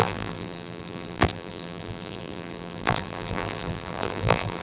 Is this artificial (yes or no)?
yes